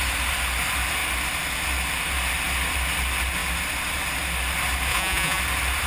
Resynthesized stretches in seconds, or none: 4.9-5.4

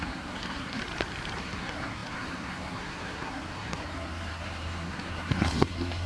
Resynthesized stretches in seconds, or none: 0.0-0.8; 1.4-6.1